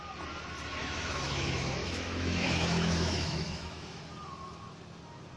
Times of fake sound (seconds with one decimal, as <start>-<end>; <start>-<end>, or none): 0.8-4.0